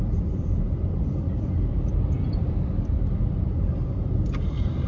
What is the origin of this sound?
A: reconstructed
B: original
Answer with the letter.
A